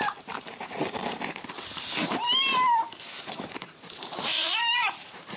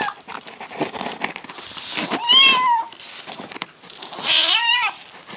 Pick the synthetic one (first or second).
first